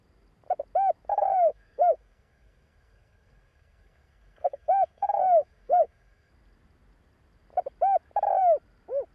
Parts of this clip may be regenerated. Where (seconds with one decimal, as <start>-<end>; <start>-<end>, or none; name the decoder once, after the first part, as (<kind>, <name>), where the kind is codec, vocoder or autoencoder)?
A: 1.1-6.3 (codec, SNAC)